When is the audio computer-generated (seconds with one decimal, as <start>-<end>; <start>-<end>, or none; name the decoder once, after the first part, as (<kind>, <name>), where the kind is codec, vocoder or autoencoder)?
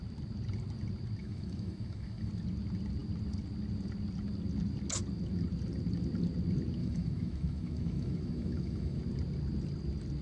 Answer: 1.2-2.3 (autoencoder, DAC-VAE); 6.8-9.0